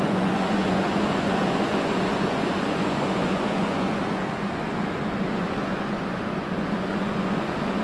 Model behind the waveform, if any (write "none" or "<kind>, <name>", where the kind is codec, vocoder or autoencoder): vocoder, Vocos